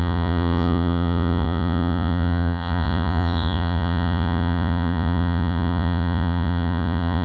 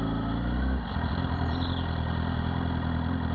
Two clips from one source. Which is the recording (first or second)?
second